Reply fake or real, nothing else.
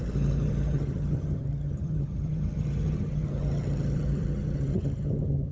fake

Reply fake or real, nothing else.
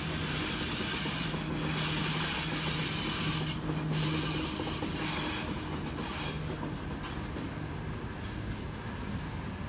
real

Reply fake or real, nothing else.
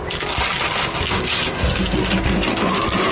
real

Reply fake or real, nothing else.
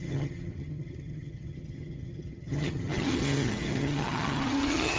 fake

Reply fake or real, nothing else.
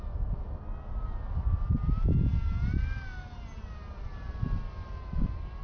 real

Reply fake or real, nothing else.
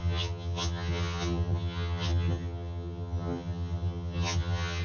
fake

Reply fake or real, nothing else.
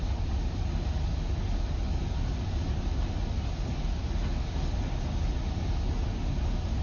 real